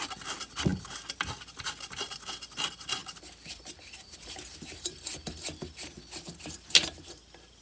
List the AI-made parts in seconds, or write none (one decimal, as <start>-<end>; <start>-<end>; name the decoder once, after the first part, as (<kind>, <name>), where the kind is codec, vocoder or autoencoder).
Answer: none